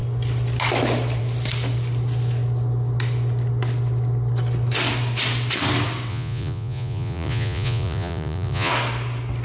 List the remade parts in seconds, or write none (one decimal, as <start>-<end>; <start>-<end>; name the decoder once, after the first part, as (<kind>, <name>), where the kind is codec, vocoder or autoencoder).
6.1-8.7 (vocoder, Vocos)